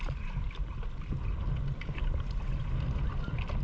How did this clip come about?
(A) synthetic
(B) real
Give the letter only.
B